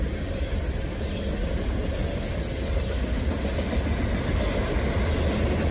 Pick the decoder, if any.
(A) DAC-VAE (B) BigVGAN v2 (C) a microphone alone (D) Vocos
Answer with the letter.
C